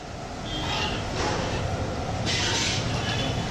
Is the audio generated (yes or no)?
no